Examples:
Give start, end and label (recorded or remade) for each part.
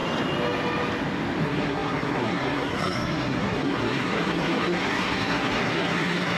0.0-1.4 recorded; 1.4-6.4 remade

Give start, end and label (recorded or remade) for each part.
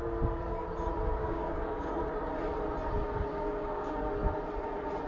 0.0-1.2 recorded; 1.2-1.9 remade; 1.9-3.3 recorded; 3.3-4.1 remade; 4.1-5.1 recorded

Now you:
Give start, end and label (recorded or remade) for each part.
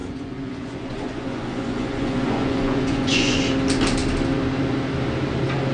0.0-3.4 remade; 3.4-5.7 recorded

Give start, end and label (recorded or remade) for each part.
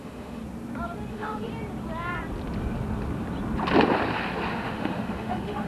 0.0-0.4 remade; 0.4-1.1 recorded; 1.1-1.5 remade; 1.5-4.5 recorded; 4.5-5.7 remade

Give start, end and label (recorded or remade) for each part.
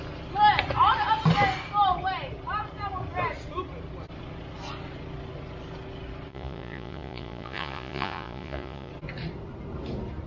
0.0-6.3 recorded; 6.3-8.9 remade; 8.9-10.3 recorded